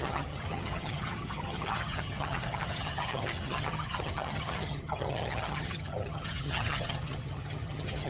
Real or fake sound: fake